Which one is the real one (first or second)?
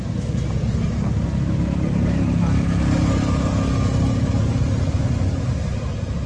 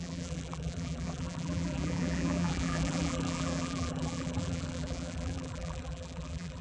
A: first